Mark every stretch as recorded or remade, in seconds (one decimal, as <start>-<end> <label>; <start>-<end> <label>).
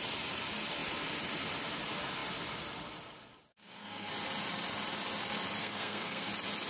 0.0-3.5 recorded; 3.5-4.1 remade; 4.1-5.6 recorded; 5.6-6.3 remade; 6.3-6.7 recorded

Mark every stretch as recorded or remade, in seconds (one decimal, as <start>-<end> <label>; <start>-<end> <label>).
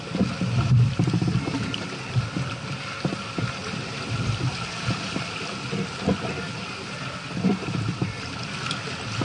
0.0-3.6 recorded; 3.6-5.4 remade; 5.4-9.2 recorded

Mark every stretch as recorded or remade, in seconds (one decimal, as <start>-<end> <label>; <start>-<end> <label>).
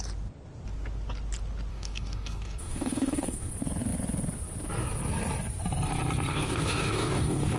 0.0-1.7 recorded; 1.7-3.5 remade; 3.5-6.3 recorded; 6.3-7.6 remade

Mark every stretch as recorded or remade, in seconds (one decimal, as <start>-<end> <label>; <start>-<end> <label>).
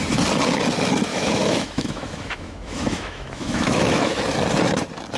0.0-1.1 recorded; 1.1-4.2 remade; 4.2-5.2 recorded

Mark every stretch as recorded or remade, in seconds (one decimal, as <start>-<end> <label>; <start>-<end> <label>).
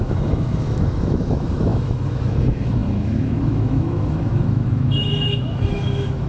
0.0-6.3 remade